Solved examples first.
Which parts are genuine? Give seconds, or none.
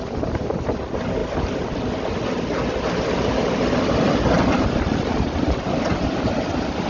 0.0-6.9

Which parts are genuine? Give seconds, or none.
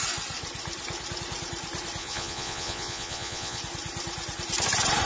0.0-2.0; 3.6-5.1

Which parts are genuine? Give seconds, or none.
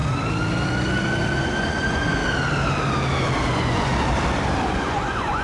0.0-1.4; 2.2-3.4; 3.9-4.7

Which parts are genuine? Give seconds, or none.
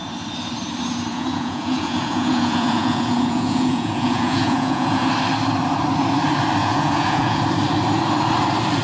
0.0-1.1; 5.1-6.6; 7.4-8.8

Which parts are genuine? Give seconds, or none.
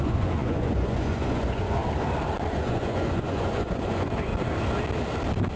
1.8-2.5; 4.3-5.6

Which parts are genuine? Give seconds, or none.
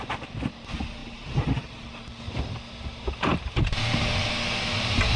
0.0-5.2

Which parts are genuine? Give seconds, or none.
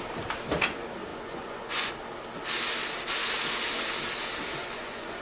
0.0-1.1; 1.9-4.6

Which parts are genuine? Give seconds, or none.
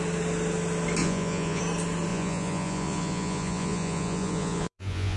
0.0-1.0; 1.6-2.1